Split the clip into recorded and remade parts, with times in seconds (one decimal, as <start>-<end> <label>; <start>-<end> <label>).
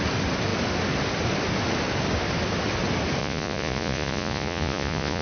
0.0-3.2 recorded; 3.2-5.2 remade